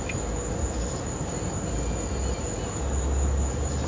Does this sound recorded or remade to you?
recorded